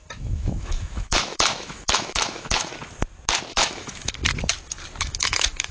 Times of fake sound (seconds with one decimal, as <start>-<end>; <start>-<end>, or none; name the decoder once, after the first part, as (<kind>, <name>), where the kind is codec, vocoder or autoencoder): 0.0-2.7 (autoencoder, DAC-VAE); 3.5-4.2; 5.0-5.7